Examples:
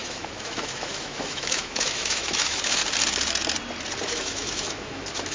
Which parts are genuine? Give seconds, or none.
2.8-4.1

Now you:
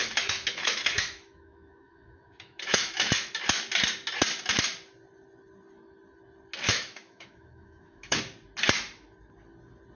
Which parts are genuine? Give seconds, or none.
3.3-6.7; 8.2-10.0

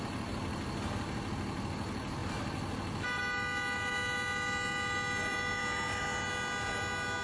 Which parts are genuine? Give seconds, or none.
0.0-7.2

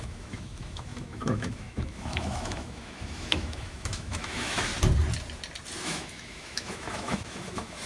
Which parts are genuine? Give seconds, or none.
4.7-5.8

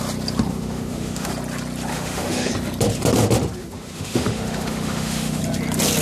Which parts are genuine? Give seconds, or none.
0.0-0.5; 1.3-1.9; 2.5-3.6; 5.4-6.0

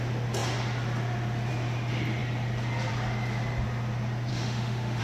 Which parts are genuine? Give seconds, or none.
0.0-4.3

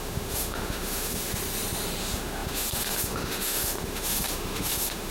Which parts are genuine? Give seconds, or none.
1.4-2.0